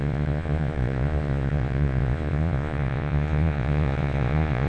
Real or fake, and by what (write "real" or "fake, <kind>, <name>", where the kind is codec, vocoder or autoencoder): fake, vocoder, Vocos